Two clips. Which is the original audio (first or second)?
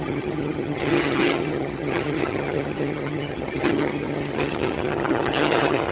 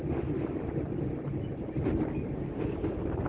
second